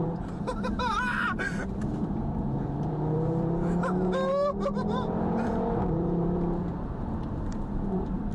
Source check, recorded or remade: remade